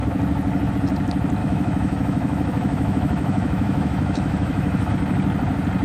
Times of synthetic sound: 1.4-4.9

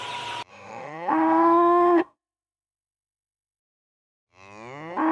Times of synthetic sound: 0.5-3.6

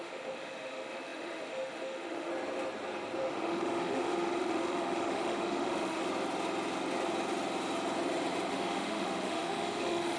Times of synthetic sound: 0.0-2.3; 3.2-6.0; 8.5-10.2

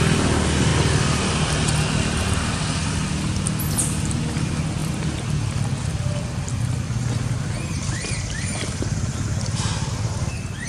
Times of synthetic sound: none